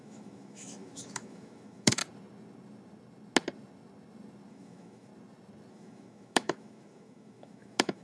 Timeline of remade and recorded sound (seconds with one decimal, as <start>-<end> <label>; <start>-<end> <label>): 0.0-2.0 remade; 2.0-4.5 recorded; 4.5-5.1 remade; 5.1-5.7 recorded; 5.7-8.0 remade